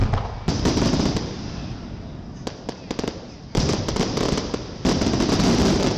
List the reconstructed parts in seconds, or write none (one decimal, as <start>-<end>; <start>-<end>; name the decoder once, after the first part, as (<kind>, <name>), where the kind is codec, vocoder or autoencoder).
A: none